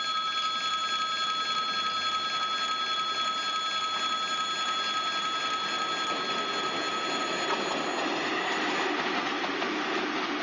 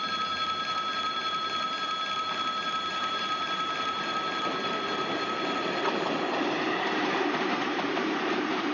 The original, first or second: first